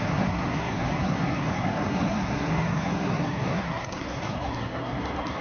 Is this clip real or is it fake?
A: fake